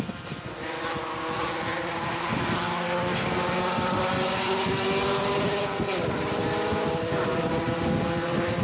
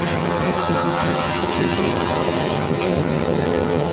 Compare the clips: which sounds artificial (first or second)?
second